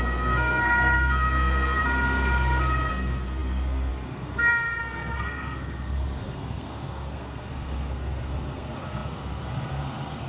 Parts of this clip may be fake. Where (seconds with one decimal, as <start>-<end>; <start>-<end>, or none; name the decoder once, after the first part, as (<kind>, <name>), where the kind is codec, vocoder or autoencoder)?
0.0-1.8 (codec, SNAC); 2.9-10.3